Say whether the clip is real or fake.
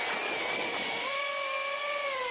real